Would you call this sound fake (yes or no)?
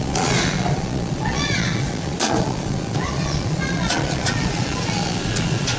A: yes